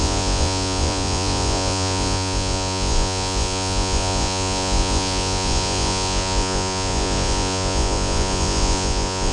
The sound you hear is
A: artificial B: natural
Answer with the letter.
A